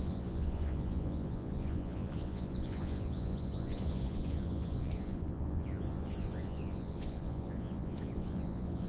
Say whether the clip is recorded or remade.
remade